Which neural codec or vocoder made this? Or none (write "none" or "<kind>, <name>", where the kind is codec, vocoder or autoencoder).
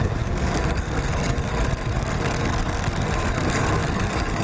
codec, SNAC